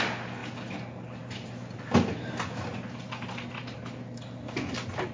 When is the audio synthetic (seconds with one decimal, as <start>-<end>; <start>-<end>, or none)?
none